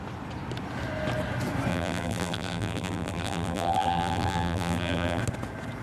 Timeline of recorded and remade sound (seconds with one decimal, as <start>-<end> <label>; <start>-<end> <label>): 0.0-1.7 recorded; 1.7-5.2 remade; 5.2-5.8 recorded